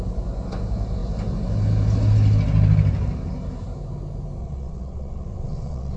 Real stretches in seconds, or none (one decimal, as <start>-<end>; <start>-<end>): 0.0-4.4